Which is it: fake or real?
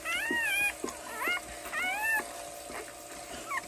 real